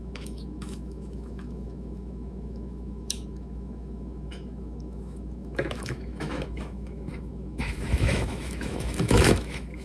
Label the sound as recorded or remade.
remade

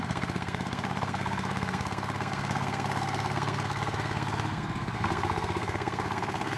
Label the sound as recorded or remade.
remade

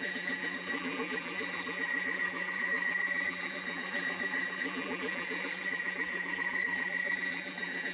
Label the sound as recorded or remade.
remade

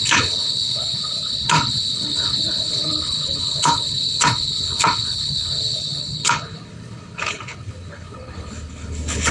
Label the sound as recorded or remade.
remade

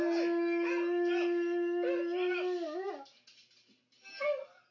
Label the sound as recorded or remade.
recorded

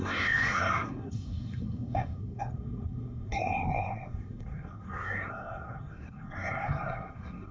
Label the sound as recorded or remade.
remade